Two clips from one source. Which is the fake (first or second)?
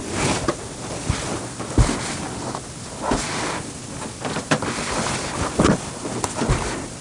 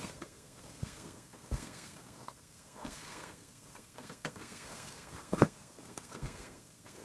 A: second